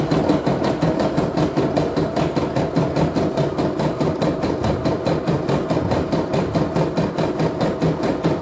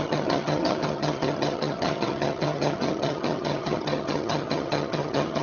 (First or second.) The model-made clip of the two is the second